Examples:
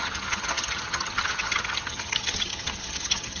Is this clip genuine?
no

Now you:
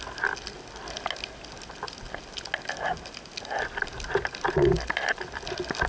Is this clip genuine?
yes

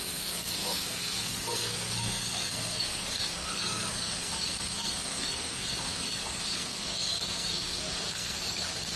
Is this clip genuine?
no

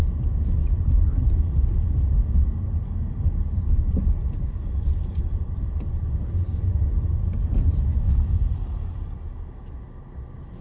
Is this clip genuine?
yes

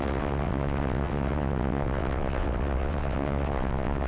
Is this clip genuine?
no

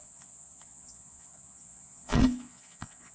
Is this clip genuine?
no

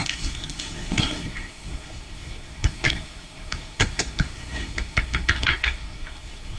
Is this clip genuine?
no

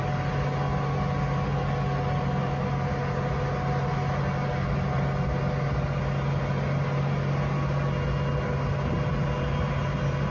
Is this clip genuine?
yes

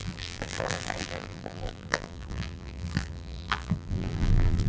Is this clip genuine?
no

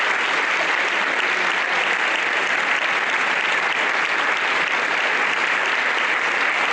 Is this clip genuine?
yes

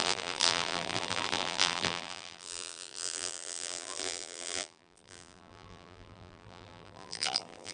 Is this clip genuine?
no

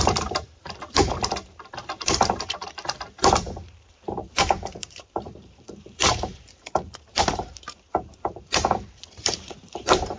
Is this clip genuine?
no